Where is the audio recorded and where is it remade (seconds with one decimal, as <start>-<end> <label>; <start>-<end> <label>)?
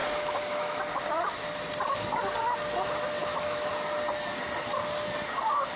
0.0-0.8 remade; 0.8-3.2 recorded; 3.2-3.7 remade; 3.7-5.8 recorded